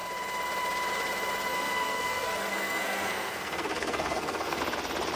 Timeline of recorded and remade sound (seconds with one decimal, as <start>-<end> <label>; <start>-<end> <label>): 0.0-1.5 recorded; 1.5-4.6 remade; 4.6-5.2 recorded